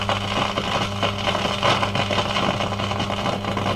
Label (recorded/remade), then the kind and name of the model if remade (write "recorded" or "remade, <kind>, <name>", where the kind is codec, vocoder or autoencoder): recorded